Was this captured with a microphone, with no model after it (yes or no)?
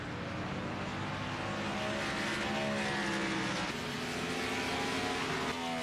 yes